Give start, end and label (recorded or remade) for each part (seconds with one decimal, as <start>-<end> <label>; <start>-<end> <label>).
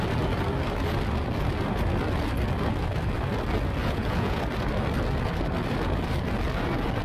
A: 0.0-3.8 recorded; 3.8-4.4 remade; 4.4-7.0 recorded